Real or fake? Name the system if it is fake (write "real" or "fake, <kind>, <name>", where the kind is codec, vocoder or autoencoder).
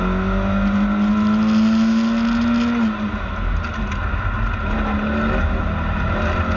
real